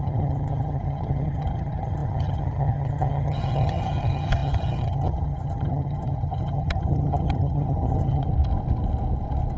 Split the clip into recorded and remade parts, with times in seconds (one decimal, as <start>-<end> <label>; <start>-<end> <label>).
0.0-8.3 remade; 8.3-9.6 recorded